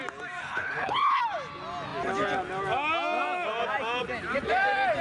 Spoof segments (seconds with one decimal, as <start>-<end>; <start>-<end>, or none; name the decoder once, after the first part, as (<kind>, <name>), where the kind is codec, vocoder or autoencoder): 0.4-1.2 (codec, HILCodec)